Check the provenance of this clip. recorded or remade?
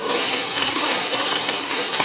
remade